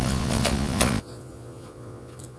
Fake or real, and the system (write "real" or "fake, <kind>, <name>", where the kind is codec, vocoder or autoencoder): fake, vocoder, Vocos